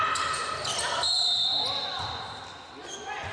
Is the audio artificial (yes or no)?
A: no